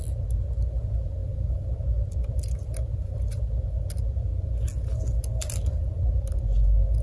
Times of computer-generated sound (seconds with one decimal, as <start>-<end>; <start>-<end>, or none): none